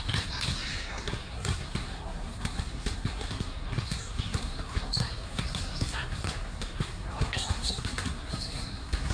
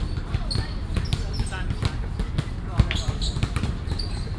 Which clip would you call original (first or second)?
second